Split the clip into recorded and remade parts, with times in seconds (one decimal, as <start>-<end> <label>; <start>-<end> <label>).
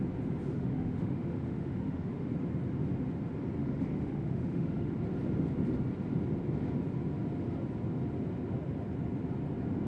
0.0-0.5 recorded; 0.5-2.2 remade; 2.2-3.6 recorded; 3.6-4.9 remade; 4.9-9.9 recorded